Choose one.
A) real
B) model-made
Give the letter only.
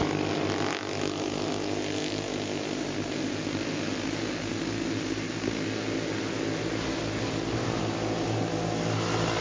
A